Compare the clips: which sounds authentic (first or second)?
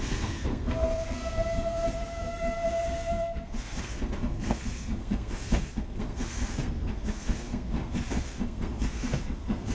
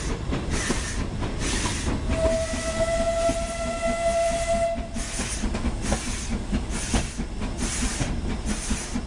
second